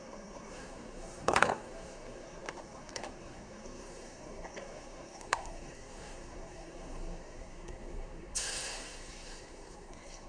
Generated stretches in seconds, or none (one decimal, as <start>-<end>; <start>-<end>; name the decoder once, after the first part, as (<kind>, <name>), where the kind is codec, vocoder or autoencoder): 0.0-10.3 (codec, SNAC)